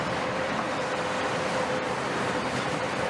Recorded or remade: remade